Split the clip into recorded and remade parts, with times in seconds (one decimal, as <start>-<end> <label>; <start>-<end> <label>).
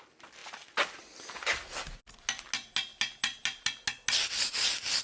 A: 0.0-5.0 recorded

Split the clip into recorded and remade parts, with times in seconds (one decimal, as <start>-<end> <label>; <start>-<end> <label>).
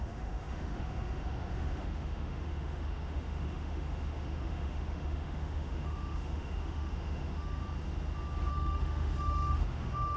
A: 0.0-7.6 remade; 7.6-8.5 recorded; 8.5-10.2 remade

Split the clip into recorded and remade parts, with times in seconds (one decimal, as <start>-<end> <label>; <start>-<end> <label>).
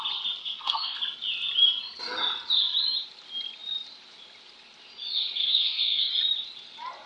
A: 0.0-0.4 recorded; 0.4-1.0 remade; 1.0-5.4 recorded; 5.4-6.1 remade; 6.1-7.1 recorded